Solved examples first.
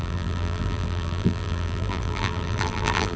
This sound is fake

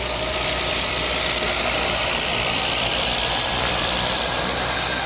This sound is fake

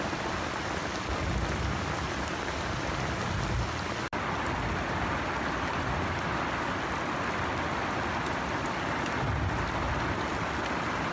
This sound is real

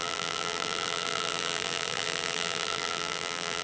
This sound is fake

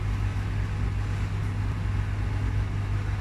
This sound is real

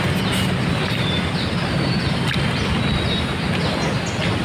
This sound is real